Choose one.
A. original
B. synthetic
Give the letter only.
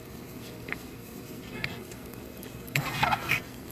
B